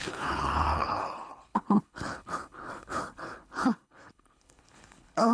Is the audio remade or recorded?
remade